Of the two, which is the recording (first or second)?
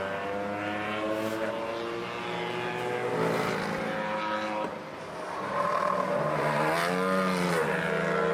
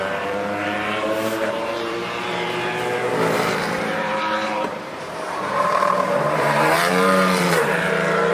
first